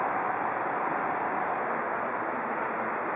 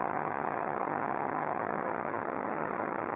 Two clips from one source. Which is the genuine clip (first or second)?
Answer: first